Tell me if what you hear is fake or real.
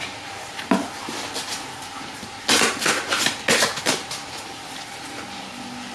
real